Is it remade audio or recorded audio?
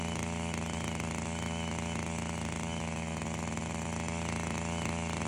recorded